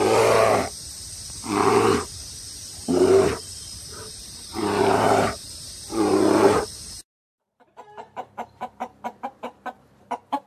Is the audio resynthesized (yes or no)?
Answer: yes